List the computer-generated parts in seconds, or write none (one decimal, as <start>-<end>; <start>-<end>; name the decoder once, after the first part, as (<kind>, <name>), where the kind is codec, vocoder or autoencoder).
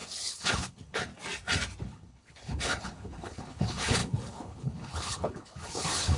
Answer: 0.0-1.1 (codec, HILCodec); 1.8-6.2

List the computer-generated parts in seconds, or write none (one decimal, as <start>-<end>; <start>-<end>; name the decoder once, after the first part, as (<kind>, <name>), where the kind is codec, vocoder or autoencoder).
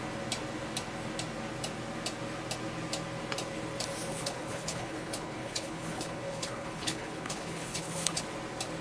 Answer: 4.1-8.2 (codec, HILCodec)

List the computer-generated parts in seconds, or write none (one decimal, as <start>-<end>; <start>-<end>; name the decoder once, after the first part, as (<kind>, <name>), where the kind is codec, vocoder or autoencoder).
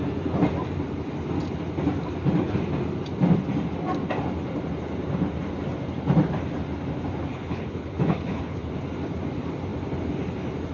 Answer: 7.3-8.7 (codec, HILCodec)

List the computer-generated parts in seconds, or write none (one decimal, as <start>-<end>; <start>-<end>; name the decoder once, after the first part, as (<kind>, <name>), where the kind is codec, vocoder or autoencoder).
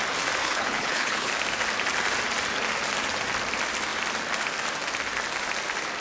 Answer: 0.4-1.3 (codec, HILCodec)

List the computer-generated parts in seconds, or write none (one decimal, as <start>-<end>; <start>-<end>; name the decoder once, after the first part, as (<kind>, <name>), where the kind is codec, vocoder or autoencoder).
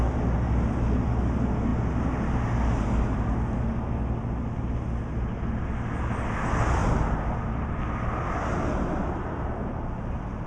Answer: none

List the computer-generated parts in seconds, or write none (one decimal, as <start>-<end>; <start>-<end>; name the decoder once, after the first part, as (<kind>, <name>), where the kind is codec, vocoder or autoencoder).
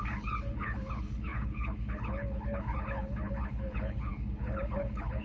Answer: 0.0-5.2 (codec, HILCodec)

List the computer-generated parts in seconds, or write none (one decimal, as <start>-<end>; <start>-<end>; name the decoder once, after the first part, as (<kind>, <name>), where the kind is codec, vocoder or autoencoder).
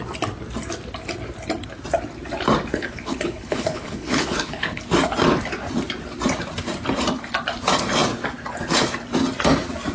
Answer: 2.7-4.8 (codec, HILCodec)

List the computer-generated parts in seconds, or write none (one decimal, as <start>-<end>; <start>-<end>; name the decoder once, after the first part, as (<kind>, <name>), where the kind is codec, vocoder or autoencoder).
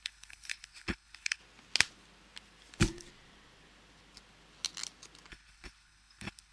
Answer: 0.0-1.4 (codec, HILCodec); 5.3-6.5